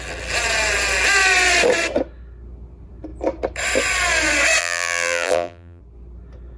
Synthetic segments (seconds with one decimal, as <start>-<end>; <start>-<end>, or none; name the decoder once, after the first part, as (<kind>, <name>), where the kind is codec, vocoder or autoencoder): 4.6-5.8 (vocoder, BigVGAN v2)